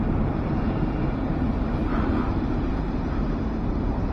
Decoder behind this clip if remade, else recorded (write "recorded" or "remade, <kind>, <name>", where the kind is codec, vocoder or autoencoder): remade, vocoder, BigVGAN v2